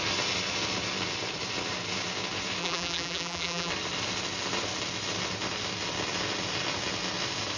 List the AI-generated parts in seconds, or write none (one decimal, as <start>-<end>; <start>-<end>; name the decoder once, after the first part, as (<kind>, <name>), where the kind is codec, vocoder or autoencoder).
2.6-3.7 (vocoder, BigVGAN v2)

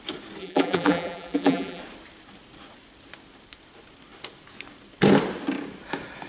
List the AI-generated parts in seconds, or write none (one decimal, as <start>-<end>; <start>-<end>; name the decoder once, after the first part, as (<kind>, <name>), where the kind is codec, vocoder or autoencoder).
0.4-1.8 (vocoder, BigVGAN v2)

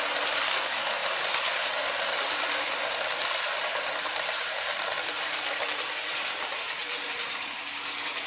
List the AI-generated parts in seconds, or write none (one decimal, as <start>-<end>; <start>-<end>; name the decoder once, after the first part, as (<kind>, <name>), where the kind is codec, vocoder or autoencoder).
3.7-5.9 (vocoder, BigVGAN v2); 6.8-7.6

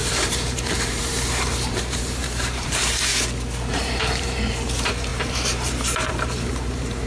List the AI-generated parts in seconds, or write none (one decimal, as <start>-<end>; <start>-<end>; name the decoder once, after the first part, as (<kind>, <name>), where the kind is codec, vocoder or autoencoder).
0.0-3.1 (vocoder, BigVGAN v2); 3.7-7.1

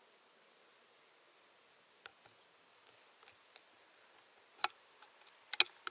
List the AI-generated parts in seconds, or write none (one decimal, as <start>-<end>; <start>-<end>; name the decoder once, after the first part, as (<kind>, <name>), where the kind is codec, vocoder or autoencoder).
none